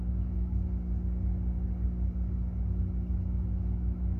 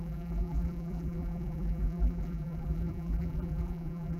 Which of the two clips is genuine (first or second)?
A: first